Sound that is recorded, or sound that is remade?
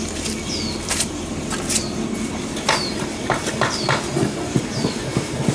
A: recorded